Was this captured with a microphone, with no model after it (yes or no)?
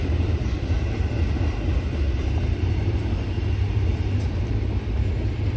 yes